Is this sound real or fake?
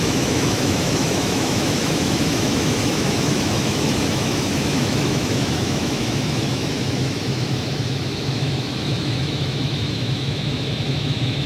fake